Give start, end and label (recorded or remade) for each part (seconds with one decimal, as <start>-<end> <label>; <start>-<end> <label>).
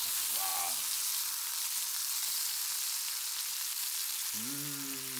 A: 0.0-5.2 recorded